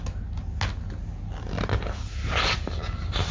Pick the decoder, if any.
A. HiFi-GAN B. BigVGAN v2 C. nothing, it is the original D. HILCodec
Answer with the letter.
C